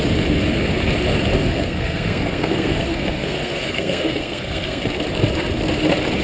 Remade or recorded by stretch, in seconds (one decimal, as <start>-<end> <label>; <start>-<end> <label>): 0.0-1.4 recorded; 1.4-4.8 remade; 4.8-6.2 recorded